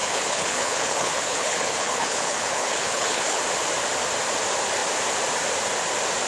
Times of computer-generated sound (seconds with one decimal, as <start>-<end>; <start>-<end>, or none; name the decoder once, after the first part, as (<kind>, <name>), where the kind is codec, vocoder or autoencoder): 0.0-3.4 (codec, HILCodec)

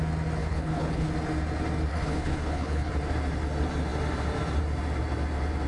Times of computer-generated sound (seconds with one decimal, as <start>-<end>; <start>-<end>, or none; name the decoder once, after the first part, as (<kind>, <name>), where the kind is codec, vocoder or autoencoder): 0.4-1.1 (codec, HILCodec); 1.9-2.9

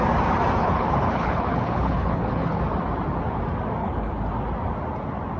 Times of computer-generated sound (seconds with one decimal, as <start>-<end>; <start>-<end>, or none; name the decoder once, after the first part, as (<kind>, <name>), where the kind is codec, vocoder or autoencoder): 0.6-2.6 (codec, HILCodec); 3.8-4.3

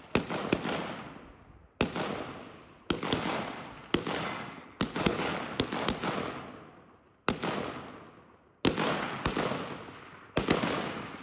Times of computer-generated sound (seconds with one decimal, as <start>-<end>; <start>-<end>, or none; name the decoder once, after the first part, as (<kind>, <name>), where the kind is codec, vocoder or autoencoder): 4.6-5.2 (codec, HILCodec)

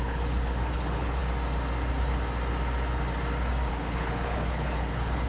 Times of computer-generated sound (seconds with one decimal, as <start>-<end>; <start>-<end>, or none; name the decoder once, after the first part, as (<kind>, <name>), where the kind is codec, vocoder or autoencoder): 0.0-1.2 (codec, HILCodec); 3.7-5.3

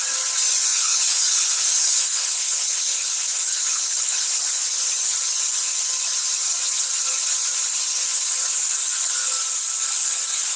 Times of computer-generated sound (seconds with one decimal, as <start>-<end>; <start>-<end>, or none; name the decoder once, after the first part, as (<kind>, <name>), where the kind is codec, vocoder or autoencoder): 0.7-4.3 (codec, HILCodec)

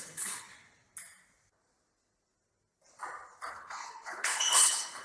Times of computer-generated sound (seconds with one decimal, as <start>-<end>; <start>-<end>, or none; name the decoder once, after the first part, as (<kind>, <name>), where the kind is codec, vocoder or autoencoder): 0.0-0.5 (codec, HILCodec); 3.5-5.0